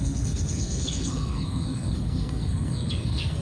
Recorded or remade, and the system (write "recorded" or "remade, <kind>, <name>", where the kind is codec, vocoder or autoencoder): remade, codec, SNAC